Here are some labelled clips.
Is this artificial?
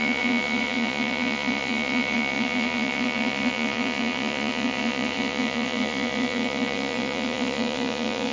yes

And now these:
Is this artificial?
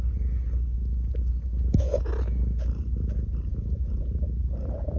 no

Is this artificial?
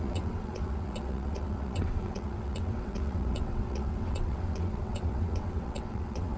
yes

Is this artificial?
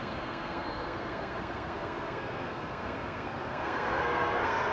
yes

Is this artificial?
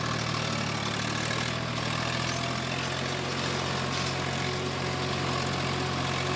no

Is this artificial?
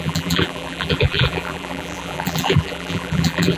yes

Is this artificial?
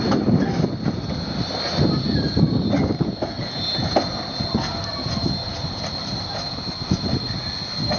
no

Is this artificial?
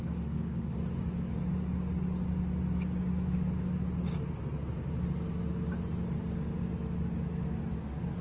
no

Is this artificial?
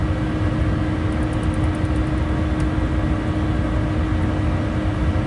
no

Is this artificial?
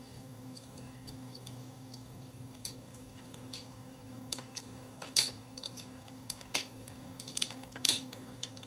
yes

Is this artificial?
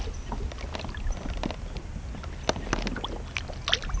no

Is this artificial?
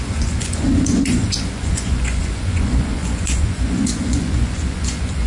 yes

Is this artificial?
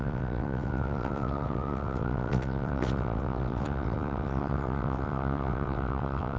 yes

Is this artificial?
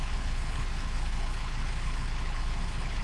yes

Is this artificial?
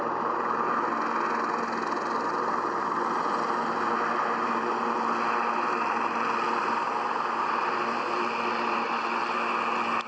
no